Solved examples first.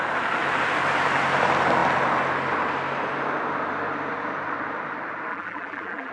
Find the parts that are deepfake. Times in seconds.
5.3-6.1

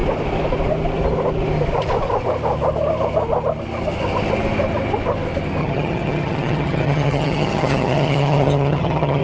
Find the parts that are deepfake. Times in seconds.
5.6-9.2

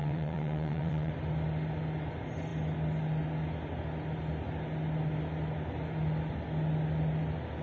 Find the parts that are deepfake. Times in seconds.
0.0-1.1

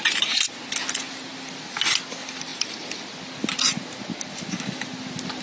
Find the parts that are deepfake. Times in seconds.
none

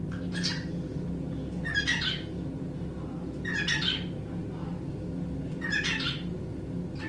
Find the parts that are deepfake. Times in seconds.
none

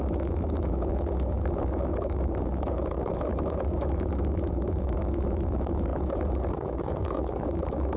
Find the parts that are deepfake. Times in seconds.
0.0-8.0